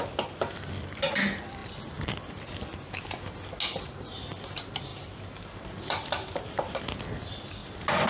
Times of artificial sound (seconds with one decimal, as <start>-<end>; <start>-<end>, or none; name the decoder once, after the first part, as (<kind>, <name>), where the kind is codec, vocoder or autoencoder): 1.6-2.5 (vocoder, BigVGAN v2); 4.9-6.8; 7.6-8.1